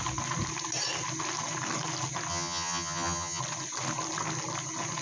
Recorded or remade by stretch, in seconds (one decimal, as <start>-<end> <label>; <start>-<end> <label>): 0.0-2.3 recorded; 2.3-3.4 remade; 3.4-5.0 recorded